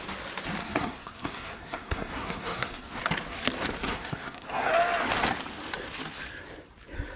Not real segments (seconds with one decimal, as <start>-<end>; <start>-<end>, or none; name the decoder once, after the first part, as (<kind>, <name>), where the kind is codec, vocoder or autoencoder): 0.6-3.0 (codec, SNAC); 3.8-4.7